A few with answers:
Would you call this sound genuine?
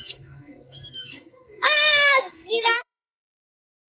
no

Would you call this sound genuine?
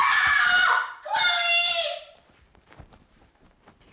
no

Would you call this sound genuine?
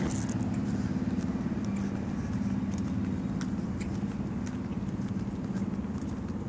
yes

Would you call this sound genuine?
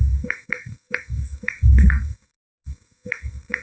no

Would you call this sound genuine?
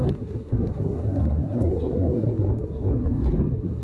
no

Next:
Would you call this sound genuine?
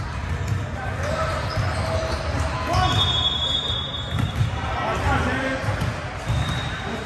yes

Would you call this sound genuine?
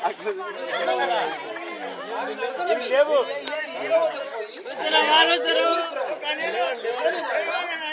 yes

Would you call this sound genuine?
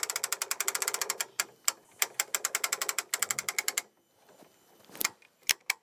yes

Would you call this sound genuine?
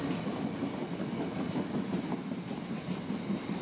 yes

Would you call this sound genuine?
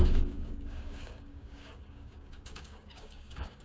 no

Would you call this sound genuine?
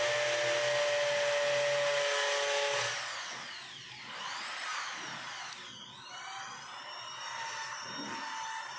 yes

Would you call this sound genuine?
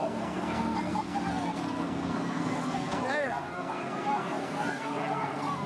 no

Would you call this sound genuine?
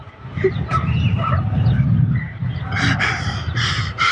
no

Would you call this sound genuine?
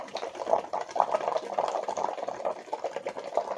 yes